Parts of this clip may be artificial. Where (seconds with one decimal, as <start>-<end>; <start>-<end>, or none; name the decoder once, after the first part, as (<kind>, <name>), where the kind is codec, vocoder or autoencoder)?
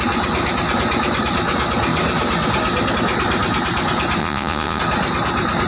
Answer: 4.2-4.8 (vocoder, Vocos)